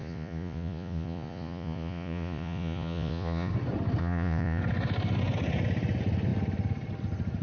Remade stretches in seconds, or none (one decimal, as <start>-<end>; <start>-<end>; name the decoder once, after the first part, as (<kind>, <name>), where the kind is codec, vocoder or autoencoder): 0.0-3.5 (vocoder, Vocos); 4.0-4.6